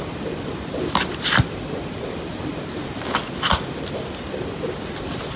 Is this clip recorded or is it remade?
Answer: remade